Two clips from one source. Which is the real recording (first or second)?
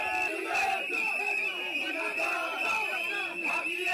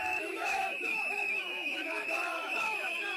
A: first